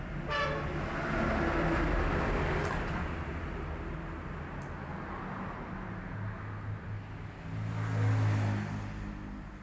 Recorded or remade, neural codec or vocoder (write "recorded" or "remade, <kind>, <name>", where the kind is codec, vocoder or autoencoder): recorded